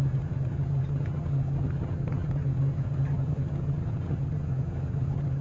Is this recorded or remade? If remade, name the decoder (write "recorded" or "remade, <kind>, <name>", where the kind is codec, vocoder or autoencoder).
remade, vocoder, HiFi-GAN